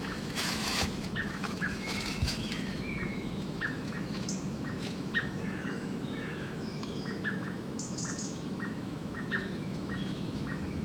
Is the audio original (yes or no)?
no